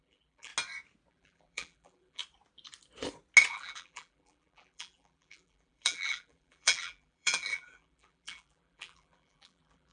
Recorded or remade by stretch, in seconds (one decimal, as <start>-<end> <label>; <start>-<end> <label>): 0.0-0.5 remade; 0.5-1.1 recorded; 1.1-2.2 remade; 2.2-3.5 recorded; 3.5-9.9 remade